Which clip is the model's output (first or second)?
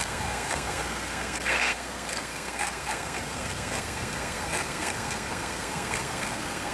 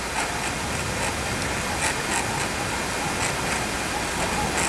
first